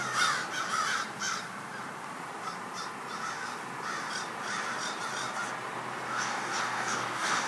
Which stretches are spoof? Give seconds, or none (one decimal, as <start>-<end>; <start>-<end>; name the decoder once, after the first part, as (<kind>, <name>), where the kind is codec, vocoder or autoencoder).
6.1-7.5 (codec, DAC)